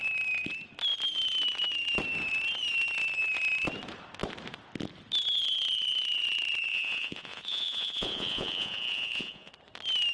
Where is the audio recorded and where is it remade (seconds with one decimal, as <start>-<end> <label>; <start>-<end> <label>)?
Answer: 0.0-6.7 recorded; 6.7-9.5 remade; 9.5-10.1 recorded